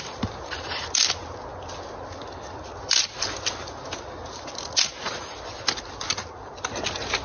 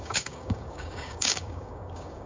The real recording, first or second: first